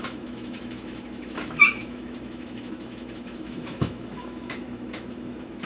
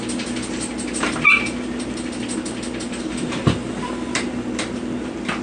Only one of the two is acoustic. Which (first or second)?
second